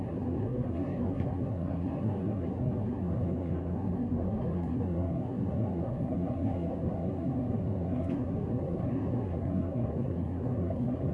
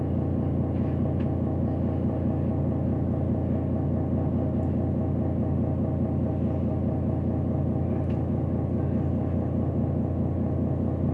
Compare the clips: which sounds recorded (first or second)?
second